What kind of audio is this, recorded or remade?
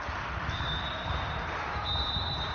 recorded